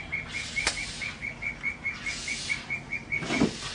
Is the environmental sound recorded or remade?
recorded